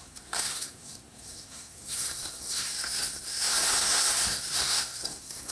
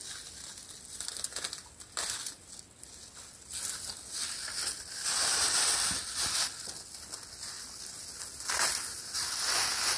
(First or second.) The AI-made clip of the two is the first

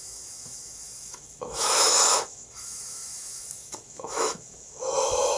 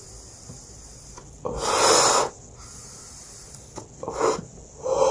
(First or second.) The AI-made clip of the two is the first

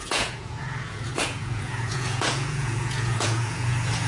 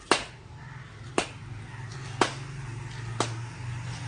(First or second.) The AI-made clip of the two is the first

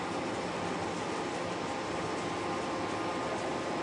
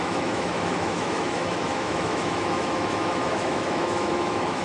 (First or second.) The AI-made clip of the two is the second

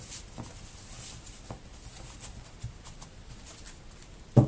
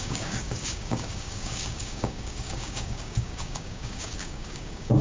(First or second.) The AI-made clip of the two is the second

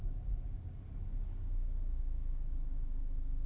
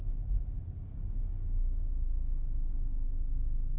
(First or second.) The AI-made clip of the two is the second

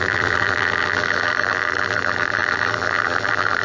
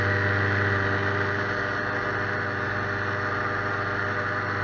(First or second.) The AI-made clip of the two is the first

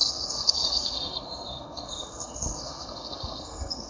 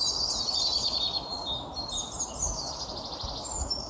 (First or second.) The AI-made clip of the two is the first